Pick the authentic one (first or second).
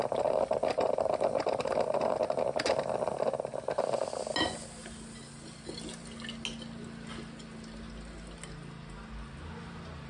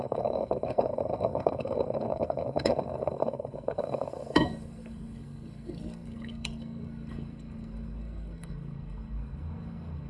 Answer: first